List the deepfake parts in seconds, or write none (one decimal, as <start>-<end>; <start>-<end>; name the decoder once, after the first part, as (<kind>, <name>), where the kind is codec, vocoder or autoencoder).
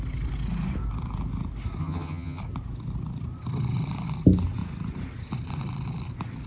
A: 1.8-2.4 (vocoder, HiFi-GAN)